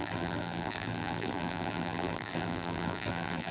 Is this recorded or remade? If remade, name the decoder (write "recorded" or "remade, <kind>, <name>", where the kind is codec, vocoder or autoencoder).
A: remade, vocoder, BigVGAN v2